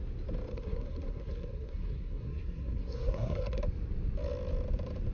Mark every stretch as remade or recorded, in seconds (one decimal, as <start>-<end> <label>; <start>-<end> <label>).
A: 0.0-0.5 recorded; 0.5-3.6 remade; 3.6-5.1 recorded